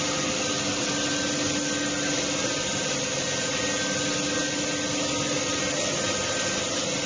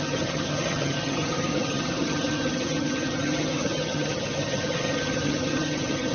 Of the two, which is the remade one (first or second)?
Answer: second